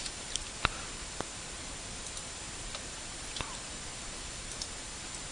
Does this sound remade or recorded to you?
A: recorded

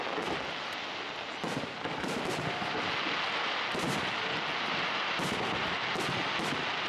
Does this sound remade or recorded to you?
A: recorded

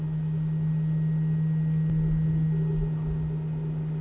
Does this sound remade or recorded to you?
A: recorded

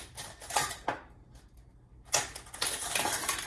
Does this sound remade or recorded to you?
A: recorded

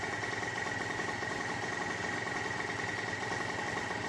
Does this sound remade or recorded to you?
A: recorded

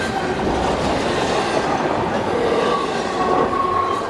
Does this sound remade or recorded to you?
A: recorded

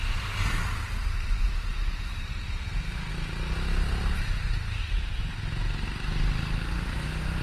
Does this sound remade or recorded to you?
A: recorded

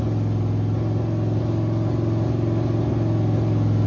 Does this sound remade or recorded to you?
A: recorded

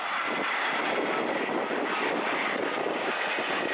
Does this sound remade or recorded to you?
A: recorded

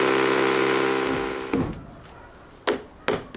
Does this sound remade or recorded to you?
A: recorded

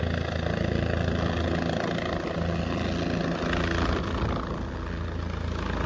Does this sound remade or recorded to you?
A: recorded